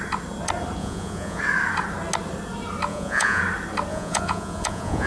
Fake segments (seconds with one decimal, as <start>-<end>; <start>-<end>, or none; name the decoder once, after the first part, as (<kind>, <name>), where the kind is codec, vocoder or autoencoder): 0.8-1.4 (vocoder, Vocos); 2.9-3.4; 3.9-5.1